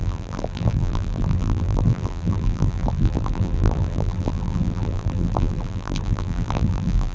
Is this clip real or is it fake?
fake